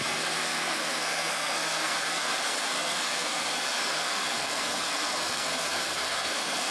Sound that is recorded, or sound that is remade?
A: remade